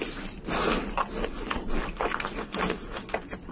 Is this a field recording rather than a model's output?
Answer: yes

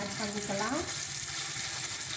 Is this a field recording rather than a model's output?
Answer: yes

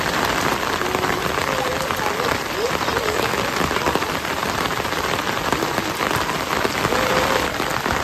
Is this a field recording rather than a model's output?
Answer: no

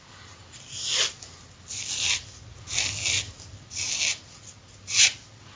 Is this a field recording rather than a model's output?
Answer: yes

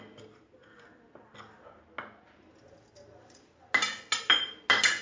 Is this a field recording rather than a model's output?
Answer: yes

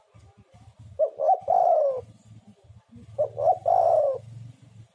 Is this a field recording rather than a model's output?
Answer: yes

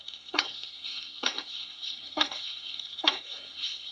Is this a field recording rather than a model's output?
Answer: no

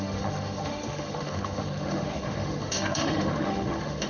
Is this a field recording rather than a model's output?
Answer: no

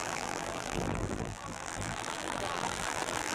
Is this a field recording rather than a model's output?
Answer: no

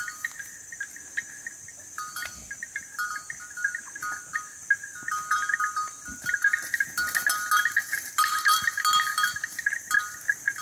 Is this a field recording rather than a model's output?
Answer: yes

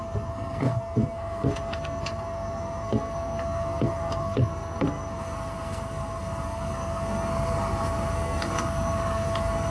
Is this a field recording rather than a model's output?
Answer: no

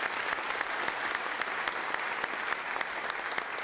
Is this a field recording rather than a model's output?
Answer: yes